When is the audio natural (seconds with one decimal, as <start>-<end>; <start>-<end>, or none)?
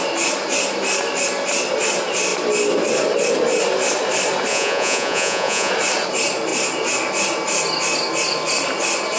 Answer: 0.0-4.5; 5.7-9.2